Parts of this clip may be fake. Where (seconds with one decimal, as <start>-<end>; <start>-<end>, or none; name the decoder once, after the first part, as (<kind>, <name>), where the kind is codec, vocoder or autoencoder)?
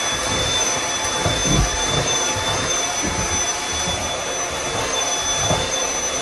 none